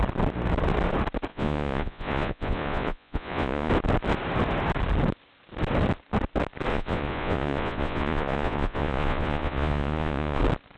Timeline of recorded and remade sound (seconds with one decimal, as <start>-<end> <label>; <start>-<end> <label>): 0.0-1.3 recorded; 1.3-3.7 remade; 3.7-6.7 recorded; 6.7-10.4 remade; 10.4-10.8 recorded